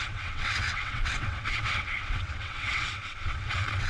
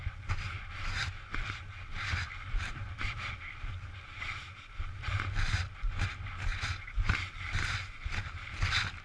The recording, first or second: second